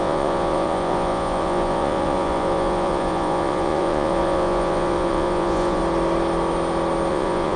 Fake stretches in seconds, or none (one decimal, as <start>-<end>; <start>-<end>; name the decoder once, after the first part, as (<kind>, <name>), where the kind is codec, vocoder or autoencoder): 0.0-5.8 (vocoder, Vocos); 7.1-7.6